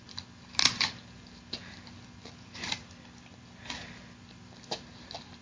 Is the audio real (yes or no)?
yes